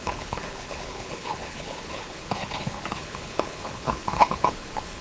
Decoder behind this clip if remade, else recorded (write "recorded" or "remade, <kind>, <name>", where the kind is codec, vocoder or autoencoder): remade, codec, HILCodec